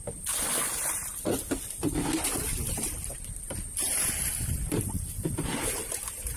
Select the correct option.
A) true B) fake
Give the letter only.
B